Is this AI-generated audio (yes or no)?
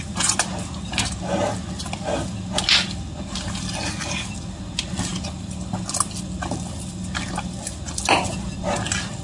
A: no